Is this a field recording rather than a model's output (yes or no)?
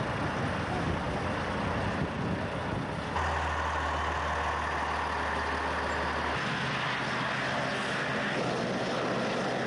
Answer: yes